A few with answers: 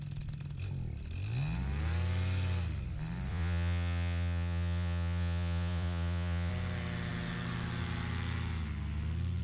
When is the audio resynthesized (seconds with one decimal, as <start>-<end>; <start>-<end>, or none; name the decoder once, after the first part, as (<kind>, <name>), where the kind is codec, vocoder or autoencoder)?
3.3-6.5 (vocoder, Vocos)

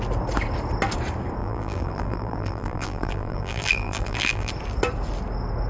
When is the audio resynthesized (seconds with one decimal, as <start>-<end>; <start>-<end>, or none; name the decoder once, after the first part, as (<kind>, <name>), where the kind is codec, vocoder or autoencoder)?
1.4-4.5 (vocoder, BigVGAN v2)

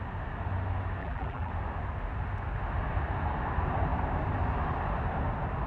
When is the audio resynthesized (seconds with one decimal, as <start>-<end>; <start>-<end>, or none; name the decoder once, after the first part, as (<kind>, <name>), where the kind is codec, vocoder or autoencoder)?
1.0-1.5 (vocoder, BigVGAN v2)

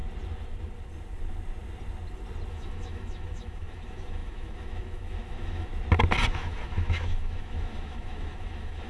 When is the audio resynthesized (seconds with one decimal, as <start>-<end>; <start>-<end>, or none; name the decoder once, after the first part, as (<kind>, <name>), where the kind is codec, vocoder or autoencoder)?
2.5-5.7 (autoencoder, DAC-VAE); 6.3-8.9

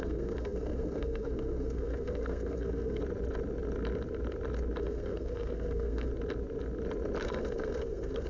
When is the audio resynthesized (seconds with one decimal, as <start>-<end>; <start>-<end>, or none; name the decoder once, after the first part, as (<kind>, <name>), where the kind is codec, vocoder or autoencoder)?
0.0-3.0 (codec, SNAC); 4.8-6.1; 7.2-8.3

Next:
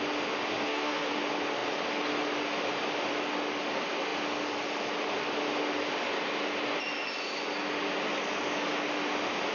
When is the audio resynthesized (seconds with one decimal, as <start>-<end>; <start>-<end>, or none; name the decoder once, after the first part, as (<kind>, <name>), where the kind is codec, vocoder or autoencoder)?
0.5-1.1 (codec, SNAC)